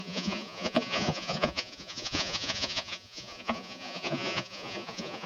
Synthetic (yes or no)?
yes